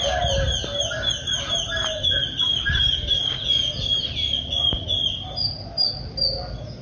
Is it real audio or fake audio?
real